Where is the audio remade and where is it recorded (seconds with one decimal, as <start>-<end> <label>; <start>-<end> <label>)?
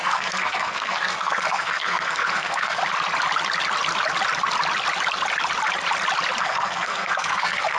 0.0-2.8 remade; 2.8-6.4 recorded; 6.4-7.8 remade